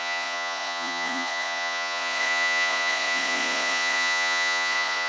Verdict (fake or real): fake